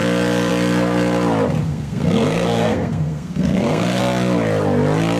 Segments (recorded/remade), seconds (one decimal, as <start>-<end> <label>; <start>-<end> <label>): 0.0-1.6 recorded; 1.6-4.0 remade; 4.0-5.2 recorded